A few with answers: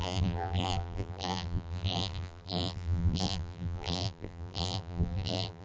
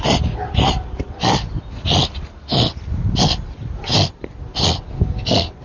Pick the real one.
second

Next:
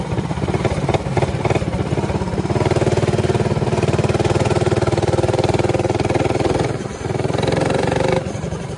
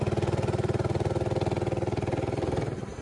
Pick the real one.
second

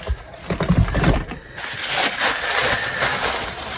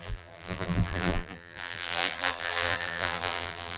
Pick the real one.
first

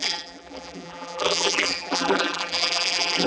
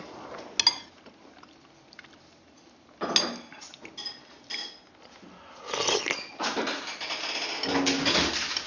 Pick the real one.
second